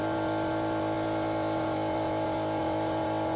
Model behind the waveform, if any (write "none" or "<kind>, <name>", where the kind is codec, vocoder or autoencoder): none